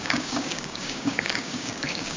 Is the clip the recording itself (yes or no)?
no